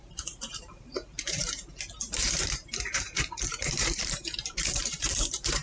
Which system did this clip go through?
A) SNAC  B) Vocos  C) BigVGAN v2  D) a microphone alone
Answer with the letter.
C